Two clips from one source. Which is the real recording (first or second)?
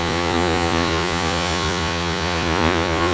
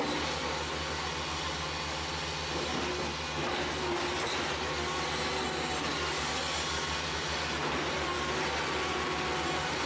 second